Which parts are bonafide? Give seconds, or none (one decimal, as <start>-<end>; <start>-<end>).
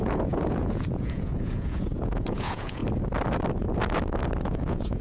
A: 2.8-4.4